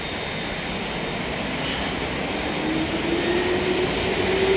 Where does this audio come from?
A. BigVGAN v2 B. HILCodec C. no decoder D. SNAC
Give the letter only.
C